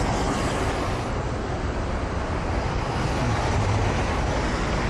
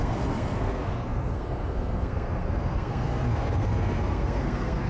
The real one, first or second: first